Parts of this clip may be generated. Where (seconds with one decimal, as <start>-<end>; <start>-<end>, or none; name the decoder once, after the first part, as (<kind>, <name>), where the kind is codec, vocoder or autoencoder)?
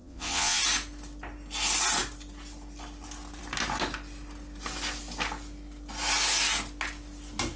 0.0-0.6 (vocoder, Vocos)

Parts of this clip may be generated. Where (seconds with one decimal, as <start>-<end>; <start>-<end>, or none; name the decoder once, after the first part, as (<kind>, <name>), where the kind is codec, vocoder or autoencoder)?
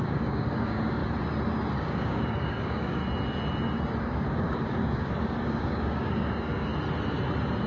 0.0-1.0 (codec, DAC); 1.8-3.0; 4.0-6.7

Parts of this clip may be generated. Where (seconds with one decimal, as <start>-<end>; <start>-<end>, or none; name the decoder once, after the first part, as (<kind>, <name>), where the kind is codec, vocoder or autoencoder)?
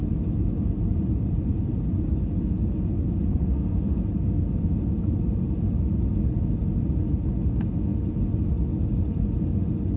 3.3-4.0 (codec, SNAC)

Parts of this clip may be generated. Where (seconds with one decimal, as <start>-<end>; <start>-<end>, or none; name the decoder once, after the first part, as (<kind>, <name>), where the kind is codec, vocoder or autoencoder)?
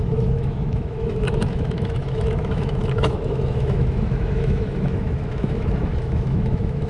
0.0-6.9 (autoencoder, DAC-VAE)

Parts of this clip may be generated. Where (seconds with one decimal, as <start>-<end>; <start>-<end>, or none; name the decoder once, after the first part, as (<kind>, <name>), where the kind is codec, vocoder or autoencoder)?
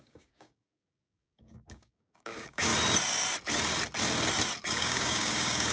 0.0-2.7 (codec, DAC); 4.6-5.7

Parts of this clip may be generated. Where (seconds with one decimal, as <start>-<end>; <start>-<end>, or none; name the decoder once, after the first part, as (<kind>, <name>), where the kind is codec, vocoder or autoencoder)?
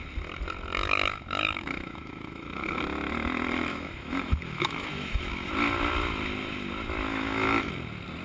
0.8-2.8 (autoencoder, DAC-VAE); 3.7-5.5; 7.1-7.7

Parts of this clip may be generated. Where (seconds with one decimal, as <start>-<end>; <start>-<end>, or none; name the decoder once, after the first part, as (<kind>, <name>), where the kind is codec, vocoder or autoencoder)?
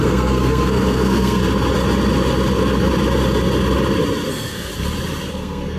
0.0-1.4 (codec, SNAC); 4.3-4.7; 5.3-5.8